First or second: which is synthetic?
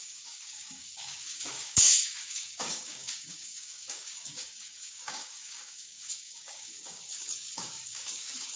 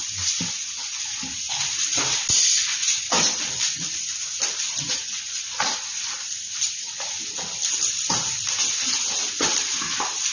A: first